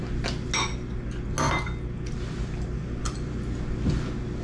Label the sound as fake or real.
real